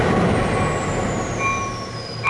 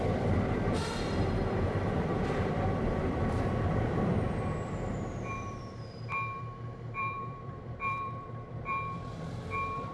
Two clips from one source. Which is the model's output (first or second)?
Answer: second